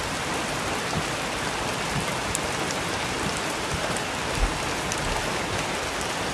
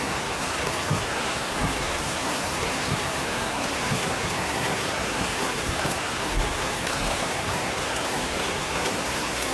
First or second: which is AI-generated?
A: second